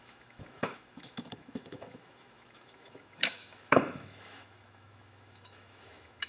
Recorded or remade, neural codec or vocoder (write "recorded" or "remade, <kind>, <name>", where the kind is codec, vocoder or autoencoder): remade, autoencoder, DAC-VAE